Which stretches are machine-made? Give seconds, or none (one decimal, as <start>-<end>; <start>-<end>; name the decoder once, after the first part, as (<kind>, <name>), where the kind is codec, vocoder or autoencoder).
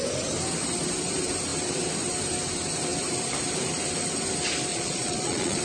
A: 4.7-5.6 (vocoder, Vocos)